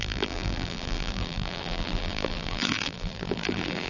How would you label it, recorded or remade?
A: remade